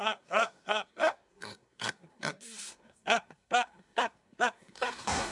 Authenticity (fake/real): fake